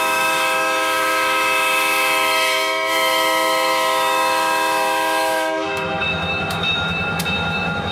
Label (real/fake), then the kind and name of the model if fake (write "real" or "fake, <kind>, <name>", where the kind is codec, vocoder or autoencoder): fake, autoencoder, DAC-VAE